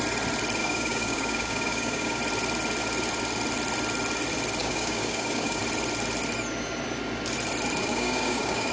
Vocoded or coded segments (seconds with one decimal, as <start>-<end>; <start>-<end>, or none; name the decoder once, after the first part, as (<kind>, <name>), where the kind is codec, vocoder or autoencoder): 0.6-2.2 (codec, DAC); 4.6-5.6; 7.8-8.7